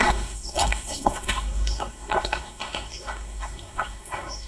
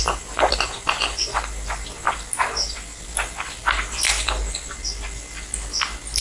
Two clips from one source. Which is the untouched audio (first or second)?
second